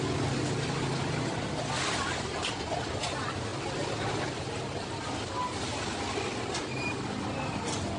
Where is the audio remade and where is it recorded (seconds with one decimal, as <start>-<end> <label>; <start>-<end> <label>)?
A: 0.0-8.0 recorded